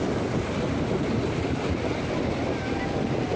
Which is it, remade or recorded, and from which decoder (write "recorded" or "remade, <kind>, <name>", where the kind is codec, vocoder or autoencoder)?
recorded